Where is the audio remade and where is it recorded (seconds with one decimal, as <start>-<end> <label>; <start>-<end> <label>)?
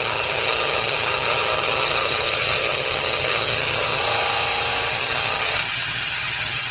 0.0-4.0 remade; 4.0-4.9 recorded; 4.9-6.7 remade